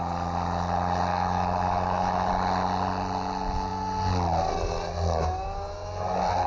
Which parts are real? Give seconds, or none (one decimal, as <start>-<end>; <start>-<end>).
0.0-1.1; 2.3-6.5